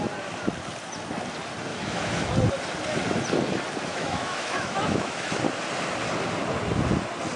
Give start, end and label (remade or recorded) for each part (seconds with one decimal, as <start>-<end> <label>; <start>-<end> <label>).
0.0-1.7 recorded; 1.7-2.3 remade; 2.3-3.9 recorded; 3.9-5.3 remade; 5.3-7.4 recorded